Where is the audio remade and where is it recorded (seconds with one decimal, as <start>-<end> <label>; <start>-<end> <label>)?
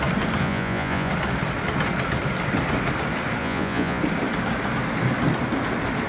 0.0-0.4 recorded; 0.4-1.1 remade; 1.1-3.4 recorded; 3.4-4.0 remade; 4.0-6.1 recorded